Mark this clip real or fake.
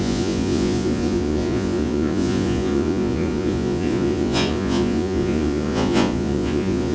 fake